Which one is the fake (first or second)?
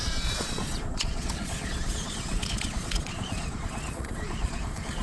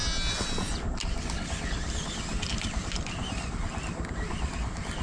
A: first